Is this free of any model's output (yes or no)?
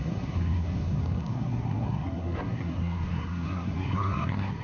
no